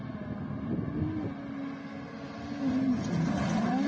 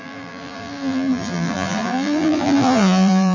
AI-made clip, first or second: second